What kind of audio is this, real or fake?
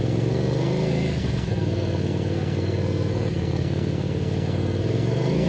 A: fake